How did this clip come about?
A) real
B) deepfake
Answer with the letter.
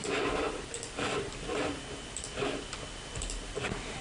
B